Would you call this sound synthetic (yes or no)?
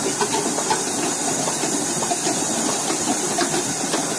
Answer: no